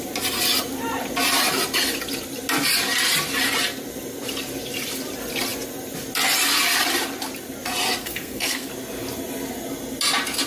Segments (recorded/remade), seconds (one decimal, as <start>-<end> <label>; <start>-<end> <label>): 0.0-8.0 recorded; 8.0-8.7 remade; 8.7-10.5 recorded